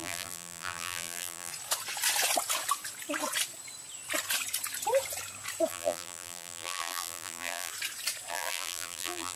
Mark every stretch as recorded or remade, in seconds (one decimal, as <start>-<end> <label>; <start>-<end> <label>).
0.0-1.5 remade; 1.5-5.7 recorded; 5.7-7.7 remade; 7.7-8.3 recorded; 8.3-9.4 remade